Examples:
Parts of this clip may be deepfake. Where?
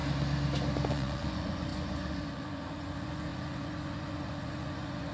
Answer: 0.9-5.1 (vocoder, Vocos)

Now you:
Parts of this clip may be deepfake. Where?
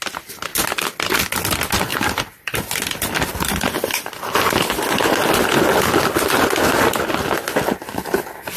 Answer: 0.5-1.2 (vocoder, BigVGAN v2); 1.9-4.6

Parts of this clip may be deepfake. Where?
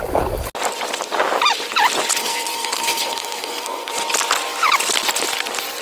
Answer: 2.2-3.9 (codec, SNAC)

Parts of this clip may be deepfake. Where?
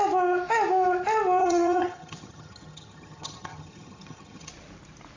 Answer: 1.4-4.5 (vocoder, HiFi-GAN)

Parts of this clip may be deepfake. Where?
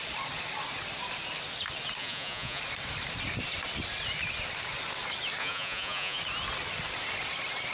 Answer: 2.0-2.6 (vocoder, Vocos); 5.4-6.2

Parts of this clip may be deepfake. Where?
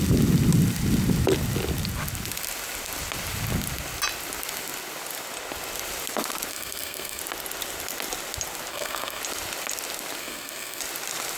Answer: 6.5-7.2 (codec, SNAC); 8.7-9.2; 10.2-10.8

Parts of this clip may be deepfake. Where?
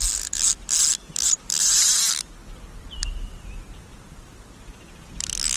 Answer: 1.0-2.3 (vocoder, BigVGAN v2); 3.0-5.1